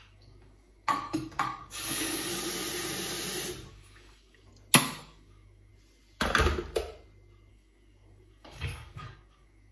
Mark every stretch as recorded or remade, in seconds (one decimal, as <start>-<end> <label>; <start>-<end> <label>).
0.0-2.3 remade; 2.3-3.7 recorded; 3.7-4.5 remade; 4.5-5.0 recorded; 5.0-5.7 remade; 5.7-7.5 recorded; 7.5-9.7 remade